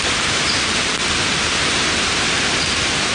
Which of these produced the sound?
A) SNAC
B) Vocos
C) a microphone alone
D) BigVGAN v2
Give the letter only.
C